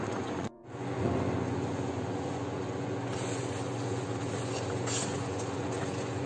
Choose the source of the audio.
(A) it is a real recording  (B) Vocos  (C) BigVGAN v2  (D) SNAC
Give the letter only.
B